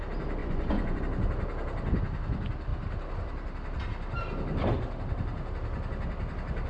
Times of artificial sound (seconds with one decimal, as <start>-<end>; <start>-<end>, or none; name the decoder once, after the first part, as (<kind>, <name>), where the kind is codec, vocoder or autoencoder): 0.4-1.0 (vocoder, Vocos)